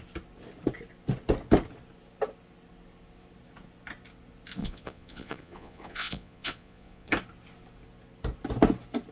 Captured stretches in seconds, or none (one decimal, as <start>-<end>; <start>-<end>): 0.0-4.6; 7.1-9.1